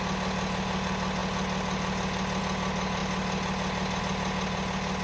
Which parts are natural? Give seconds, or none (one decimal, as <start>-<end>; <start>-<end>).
0.0-5.0